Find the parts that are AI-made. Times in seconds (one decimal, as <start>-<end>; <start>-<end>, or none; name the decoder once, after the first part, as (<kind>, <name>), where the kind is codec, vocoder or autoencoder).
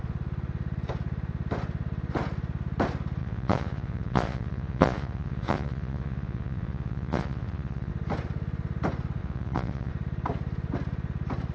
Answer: 3.2-7.9 (vocoder, Vocos); 9.2-9.9